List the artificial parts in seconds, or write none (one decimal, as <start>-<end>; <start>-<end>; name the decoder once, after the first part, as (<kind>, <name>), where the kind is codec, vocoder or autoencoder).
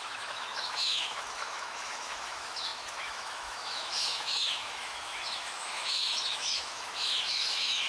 0.0-7.9 (autoencoder, DAC-VAE)